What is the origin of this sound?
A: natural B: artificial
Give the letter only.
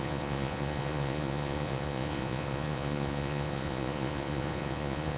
B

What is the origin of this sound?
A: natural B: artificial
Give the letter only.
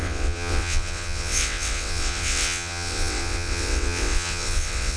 B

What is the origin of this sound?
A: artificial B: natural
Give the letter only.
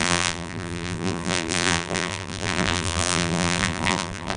A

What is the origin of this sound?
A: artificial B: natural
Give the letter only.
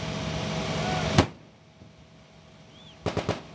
B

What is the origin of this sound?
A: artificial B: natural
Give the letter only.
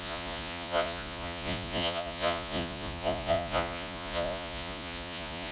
A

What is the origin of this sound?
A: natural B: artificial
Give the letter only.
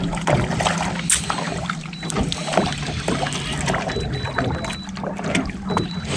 A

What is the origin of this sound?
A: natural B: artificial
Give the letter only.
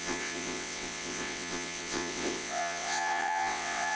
B